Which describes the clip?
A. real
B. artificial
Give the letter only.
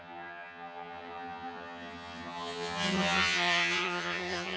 B